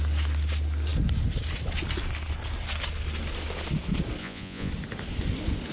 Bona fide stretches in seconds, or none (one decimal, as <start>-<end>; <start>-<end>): 0.0-4.2; 4.7-5.7